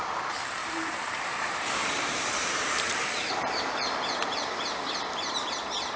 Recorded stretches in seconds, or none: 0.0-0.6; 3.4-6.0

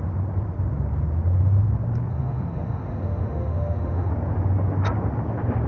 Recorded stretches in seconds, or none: 0.0-2.1; 4.1-5.7